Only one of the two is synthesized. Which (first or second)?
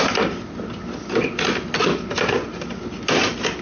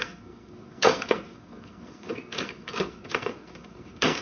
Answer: second